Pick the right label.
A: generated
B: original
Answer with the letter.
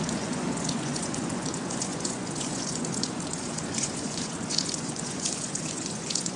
A